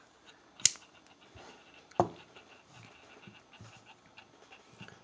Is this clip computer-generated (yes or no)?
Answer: no